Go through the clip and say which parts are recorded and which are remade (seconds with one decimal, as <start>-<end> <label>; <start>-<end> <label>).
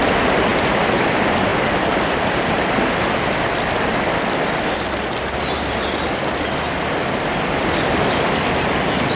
0.0-9.2 recorded